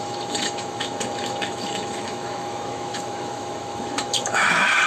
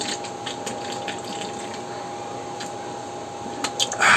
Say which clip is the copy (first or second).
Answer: first